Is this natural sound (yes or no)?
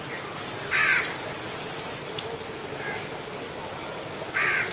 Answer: yes